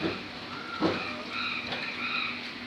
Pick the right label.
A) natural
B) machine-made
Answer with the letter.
A